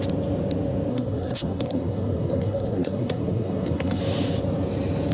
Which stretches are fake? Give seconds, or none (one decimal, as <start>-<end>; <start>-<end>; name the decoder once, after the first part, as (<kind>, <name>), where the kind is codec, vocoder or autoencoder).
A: 0.9-4.0 (codec, SNAC)